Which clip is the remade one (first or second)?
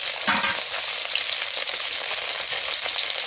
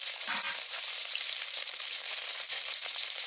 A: second